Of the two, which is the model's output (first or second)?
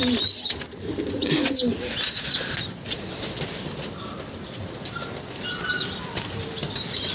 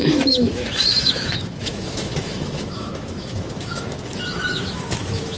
second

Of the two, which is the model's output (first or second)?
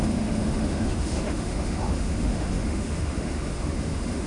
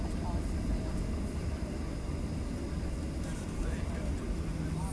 first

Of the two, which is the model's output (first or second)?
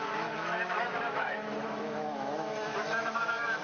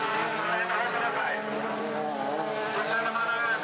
first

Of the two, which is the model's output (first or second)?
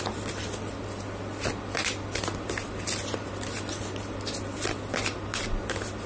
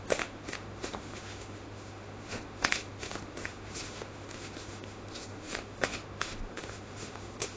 second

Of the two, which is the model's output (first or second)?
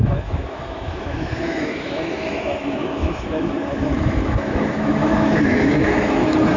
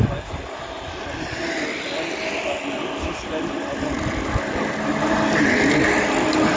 first